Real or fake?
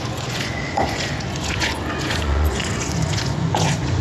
fake